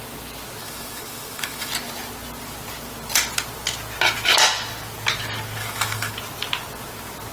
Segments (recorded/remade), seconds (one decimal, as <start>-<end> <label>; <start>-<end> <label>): 0.0-0.6 recorded; 0.6-1.7 remade; 1.7-5.6 recorded; 5.6-6.1 remade; 6.1-7.3 recorded